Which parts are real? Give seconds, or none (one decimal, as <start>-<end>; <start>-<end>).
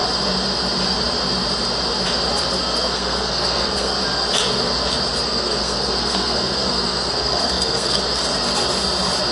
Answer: 0.0-2.6; 4.0-5.1; 8.0-9.3